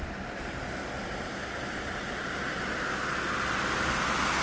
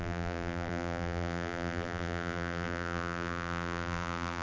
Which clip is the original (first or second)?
first